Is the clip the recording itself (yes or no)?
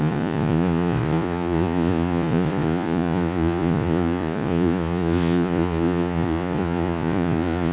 no